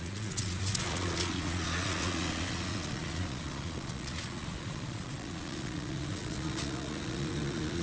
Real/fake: fake